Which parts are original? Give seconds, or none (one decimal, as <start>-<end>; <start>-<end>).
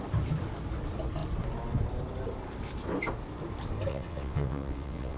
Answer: 0.0-3.9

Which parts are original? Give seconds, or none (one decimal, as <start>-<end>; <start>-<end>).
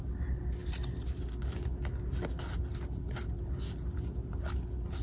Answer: 0.0-5.0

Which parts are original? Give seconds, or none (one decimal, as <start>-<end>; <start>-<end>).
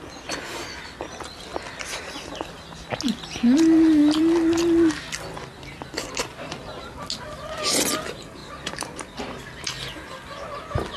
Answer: 0.0-5.5; 6.5-8.4; 9.4-11.0